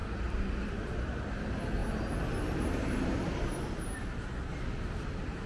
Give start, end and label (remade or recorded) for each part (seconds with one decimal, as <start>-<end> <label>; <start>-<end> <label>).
0.0-1.2 remade; 1.2-1.8 recorded; 1.8-3.3 remade; 3.3-5.5 recorded